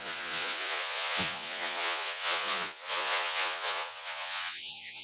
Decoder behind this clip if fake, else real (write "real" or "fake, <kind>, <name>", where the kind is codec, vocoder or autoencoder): fake, vocoder, Vocos